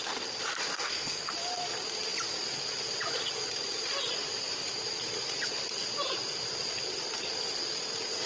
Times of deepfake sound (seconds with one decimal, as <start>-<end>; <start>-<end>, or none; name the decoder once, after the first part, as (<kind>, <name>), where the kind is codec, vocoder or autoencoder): 0.7-1.3 (codec, SNAC)